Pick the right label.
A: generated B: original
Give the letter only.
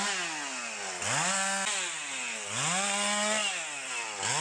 B